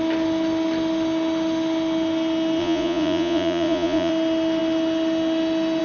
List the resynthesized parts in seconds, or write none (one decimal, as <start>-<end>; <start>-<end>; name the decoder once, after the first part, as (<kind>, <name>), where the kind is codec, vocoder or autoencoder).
2.6-4.1 (vocoder, Vocos)